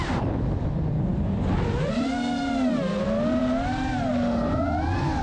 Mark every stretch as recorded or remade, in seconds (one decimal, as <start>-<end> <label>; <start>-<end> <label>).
0.0-5.2 recorded